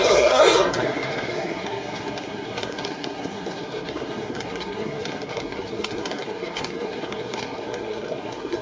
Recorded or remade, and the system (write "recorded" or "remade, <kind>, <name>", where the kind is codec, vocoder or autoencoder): remade, codec, SNAC